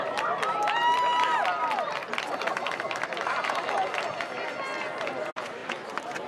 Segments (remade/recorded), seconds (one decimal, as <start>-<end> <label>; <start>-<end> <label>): 0.0-6.3 recorded